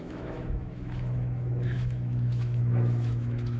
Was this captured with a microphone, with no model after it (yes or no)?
no